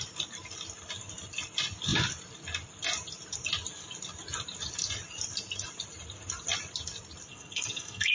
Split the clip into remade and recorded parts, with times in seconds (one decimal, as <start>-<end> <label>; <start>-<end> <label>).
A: 0.0-7.3 recorded; 7.3-8.1 remade